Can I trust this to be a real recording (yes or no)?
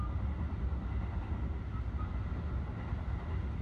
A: yes